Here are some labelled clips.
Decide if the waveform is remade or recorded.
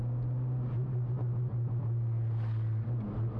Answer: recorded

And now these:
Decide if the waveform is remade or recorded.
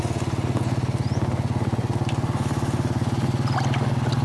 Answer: recorded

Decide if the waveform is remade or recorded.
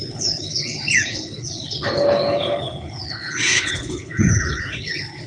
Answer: remade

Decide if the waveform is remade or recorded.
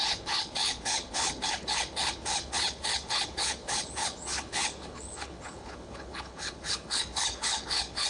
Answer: remade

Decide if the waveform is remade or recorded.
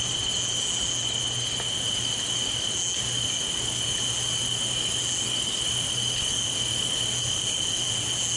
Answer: recorded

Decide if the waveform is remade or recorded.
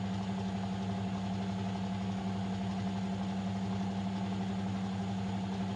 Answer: recorded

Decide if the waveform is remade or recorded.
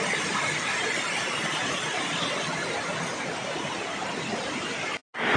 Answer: recorded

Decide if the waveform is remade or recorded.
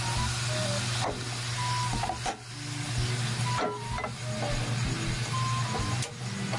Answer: recorded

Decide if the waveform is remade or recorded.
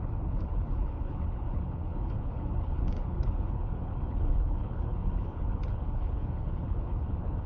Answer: remade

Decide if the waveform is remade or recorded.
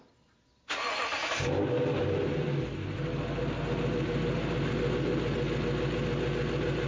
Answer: recorded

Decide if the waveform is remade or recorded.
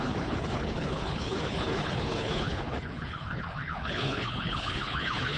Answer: remade